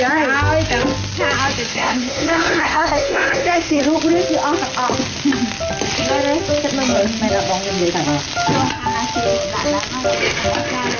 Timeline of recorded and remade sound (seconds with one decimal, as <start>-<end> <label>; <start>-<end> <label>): 0.0-1.7 recorded; 1.7-3.8 remade; 3.8-11.0 recorded